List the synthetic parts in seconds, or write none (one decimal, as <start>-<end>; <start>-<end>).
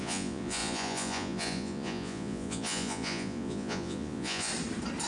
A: 0.0-4.5